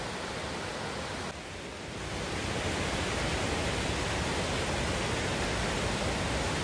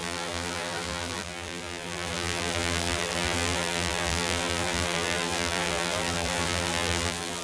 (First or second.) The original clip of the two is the first